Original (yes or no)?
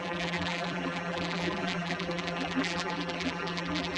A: no